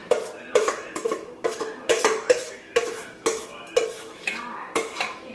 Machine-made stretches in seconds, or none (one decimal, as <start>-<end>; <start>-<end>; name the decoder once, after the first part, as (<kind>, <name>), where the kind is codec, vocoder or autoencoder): 0.0-5.3 (autoencoder, DAC-VAE)